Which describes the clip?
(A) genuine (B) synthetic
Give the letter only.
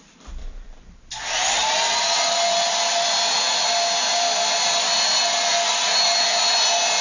A